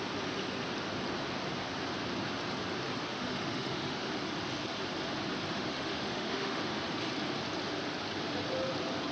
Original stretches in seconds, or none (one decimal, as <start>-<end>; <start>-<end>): 0.0-3.1; 4.1-5.5; 6.6-9.1